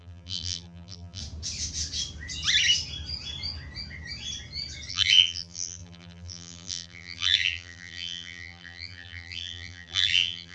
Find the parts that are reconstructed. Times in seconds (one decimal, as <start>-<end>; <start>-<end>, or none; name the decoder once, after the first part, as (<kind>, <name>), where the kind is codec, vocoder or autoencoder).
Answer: 0.0-1.2 (vocoder, BigVGAN v2); 4.9-10.5